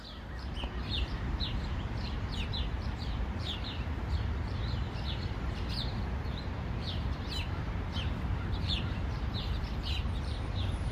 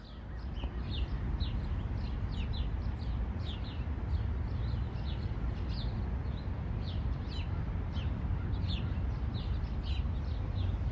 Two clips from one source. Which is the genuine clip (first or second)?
second